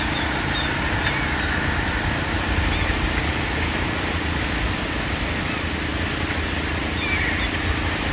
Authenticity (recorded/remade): recorded